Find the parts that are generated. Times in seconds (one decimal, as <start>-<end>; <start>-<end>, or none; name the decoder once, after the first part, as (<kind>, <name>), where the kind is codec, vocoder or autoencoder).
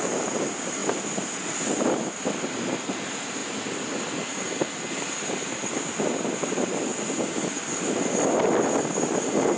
none